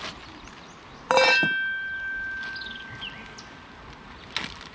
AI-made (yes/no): no